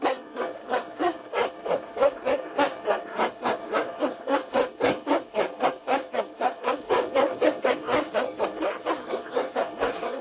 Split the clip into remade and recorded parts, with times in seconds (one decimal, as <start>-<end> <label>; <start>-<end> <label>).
0.0-10.2 remade